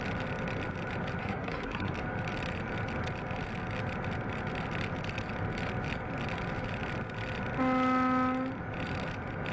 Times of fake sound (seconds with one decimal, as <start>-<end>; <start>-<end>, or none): 1.2-1.9